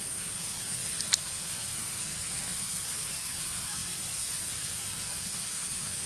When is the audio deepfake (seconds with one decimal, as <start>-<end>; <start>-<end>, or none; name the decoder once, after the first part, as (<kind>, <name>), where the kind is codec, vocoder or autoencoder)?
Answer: 0.0-6.1 (codec, SNAC)